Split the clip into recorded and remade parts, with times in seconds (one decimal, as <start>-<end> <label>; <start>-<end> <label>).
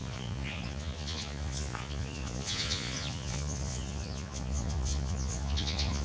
0.0-6.0 remade